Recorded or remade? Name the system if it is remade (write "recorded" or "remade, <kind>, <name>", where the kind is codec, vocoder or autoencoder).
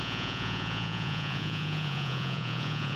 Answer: remade, vocoder, Vocos